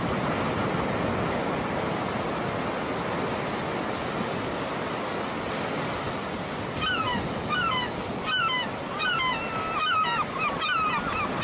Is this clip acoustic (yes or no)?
yes